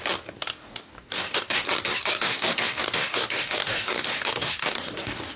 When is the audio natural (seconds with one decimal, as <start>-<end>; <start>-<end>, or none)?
0.0-0.5; 1.6-2.1